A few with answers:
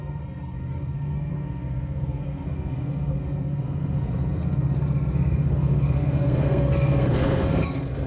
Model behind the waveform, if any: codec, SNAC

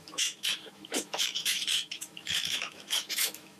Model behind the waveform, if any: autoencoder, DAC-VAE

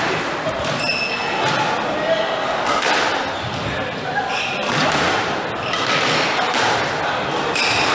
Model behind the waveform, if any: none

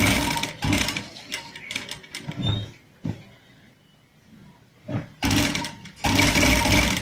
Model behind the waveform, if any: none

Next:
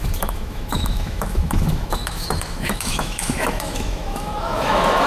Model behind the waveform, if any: autoencoder, DAC-VAE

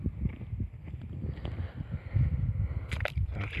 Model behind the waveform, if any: none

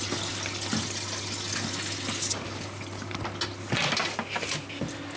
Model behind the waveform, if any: none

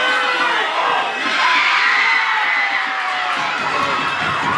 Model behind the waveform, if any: none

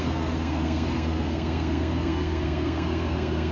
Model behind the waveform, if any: codec, SNAC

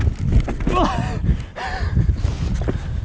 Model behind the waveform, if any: none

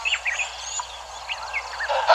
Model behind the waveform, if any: none